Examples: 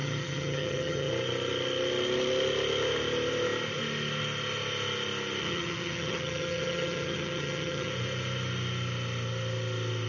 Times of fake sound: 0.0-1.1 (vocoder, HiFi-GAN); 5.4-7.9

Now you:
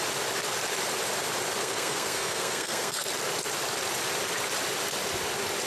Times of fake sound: 1.6-3.1 (codec, SNAC)

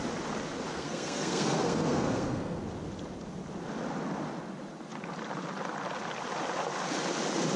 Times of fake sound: 0.7-2.6 (codec, SNAC)

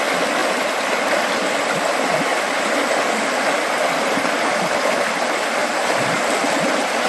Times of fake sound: 5.6-7.1 (vocoder, BigVGAN v2)